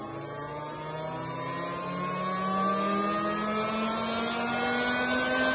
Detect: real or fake real